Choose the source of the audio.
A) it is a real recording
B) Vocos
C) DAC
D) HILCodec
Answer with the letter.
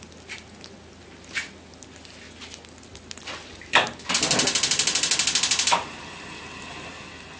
A